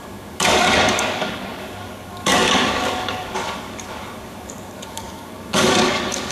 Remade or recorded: remade